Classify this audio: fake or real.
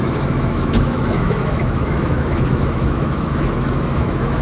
fake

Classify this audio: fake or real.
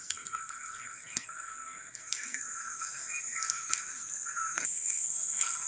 fake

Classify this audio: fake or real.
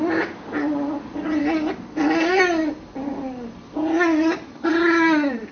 real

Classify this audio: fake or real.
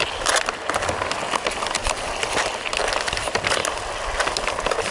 real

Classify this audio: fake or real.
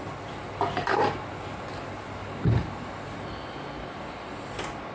real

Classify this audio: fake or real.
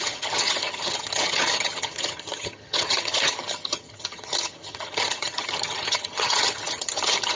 fake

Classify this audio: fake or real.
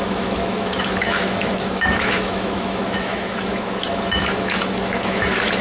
fake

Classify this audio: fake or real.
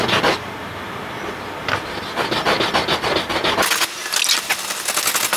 real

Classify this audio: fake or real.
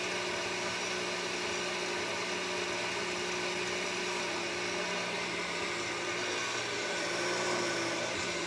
real